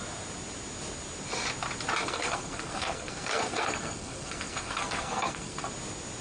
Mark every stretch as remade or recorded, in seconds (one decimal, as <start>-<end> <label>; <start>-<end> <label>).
0.0-2.0 recorded; 2.0-5.7 remade; 5.7-6.2 recorded